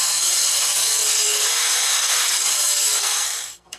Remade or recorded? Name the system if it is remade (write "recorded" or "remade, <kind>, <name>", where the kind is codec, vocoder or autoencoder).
remade, codec, SNAC